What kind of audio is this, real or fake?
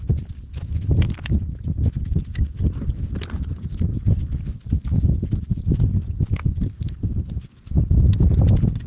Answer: real